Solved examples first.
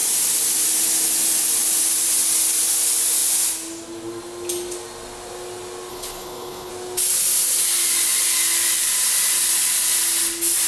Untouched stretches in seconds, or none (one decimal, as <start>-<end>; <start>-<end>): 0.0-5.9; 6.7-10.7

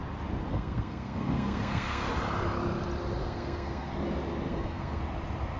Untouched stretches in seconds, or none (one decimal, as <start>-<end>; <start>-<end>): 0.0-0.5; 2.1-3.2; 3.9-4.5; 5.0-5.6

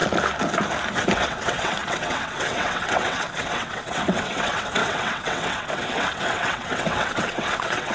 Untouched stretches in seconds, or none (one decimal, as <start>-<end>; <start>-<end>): 0.0-0.9